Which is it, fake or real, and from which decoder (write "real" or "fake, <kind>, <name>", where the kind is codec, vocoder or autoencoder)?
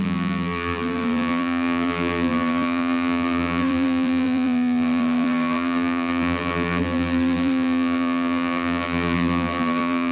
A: fake, vocoder, BigVGAN v2